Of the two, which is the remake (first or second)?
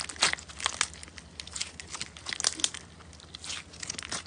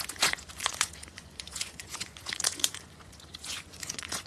second